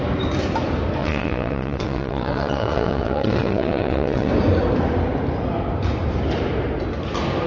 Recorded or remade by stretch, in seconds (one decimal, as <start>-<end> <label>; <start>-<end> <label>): 0.0-1.0 recorded; 1.0-4.3 remade; 4.3-7.5 recorded